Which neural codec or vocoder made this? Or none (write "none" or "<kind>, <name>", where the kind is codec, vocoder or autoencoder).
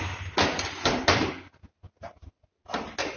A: none